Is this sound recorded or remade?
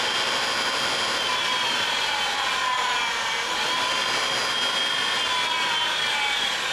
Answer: recorded